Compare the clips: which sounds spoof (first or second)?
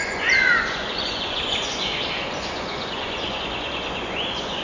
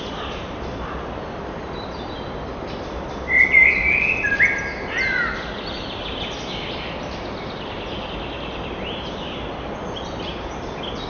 first